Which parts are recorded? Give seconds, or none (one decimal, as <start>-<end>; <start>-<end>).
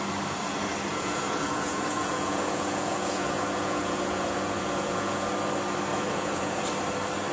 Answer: 0.0-0.9; 5.3-5.9; 6.6-7.3